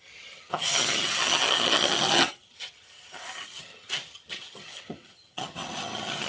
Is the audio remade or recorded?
remade